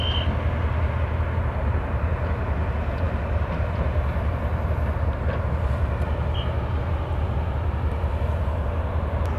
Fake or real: real